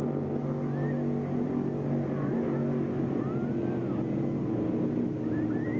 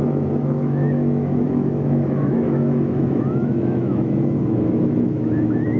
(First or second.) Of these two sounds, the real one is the first